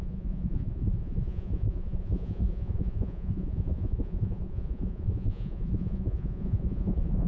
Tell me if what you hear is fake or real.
fake